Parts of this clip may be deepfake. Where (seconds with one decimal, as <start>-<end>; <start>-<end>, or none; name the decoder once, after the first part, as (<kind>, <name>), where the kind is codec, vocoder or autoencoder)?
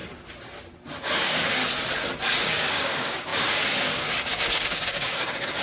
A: 1.0-1.6 (codec, DAC); 2.5-5.6